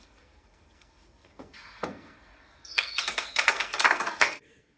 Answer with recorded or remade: remade